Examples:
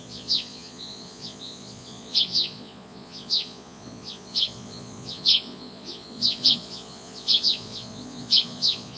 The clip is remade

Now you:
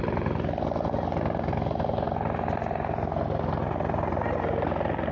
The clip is recorded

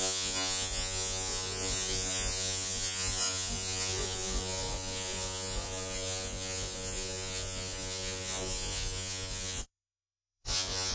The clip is remade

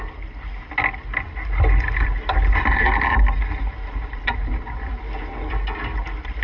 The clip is recorded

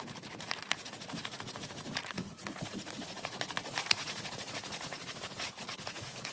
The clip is remade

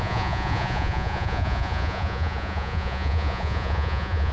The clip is remade